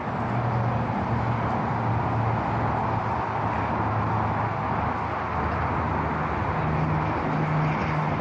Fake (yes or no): no